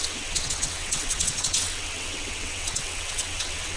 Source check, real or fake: fake